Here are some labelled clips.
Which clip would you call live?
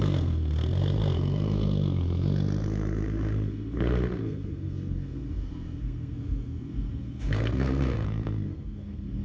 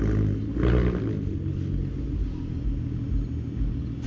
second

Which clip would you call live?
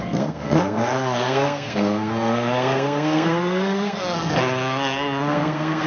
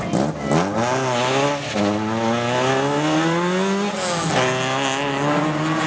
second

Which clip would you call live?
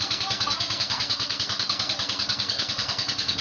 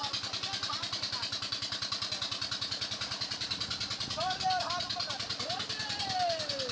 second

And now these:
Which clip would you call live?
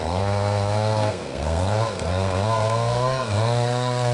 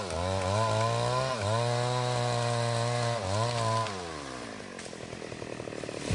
second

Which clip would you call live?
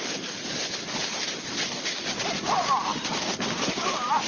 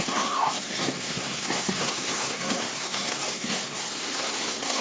first